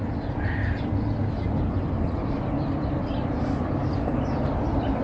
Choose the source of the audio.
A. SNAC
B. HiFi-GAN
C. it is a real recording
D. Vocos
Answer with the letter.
C